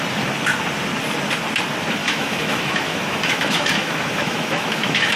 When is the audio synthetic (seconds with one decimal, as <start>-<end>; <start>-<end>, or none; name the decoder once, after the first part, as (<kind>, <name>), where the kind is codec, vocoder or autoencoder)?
2.0-5.2 (autoencoder, DAC-VAE)